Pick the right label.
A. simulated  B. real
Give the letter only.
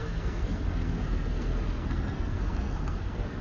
A